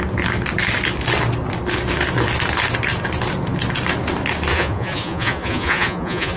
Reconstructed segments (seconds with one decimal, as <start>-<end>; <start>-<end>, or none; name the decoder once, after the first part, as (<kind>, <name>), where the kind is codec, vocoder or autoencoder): 4.5-6.4 (vocoder, Vocos)